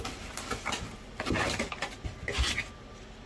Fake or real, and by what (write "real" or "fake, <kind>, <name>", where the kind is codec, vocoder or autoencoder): real